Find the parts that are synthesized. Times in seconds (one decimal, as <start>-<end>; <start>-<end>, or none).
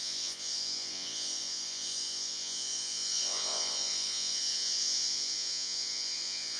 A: 0.0-6.6